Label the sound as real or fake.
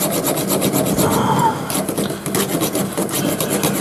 real